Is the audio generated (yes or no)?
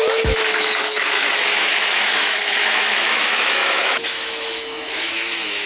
yes